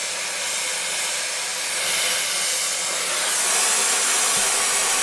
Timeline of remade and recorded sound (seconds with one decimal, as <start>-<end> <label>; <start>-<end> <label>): 0.0-1.5 remade; 1.5-4.5 recorded; 4.5-5.0 remade